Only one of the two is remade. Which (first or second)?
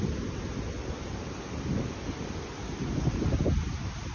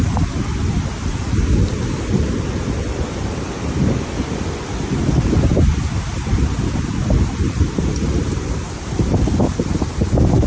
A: second